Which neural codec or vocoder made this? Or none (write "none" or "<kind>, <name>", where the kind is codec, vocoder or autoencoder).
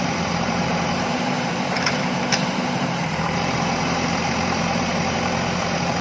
vocoder, BigVGAN v2